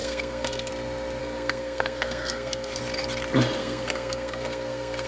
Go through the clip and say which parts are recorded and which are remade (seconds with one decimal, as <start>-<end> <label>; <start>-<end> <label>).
0.0-0.7 remade; 0.7-1.2 recorded; 1.2-2.8 remade; 2.8-3.6 recorded; 3.6-5.1 remade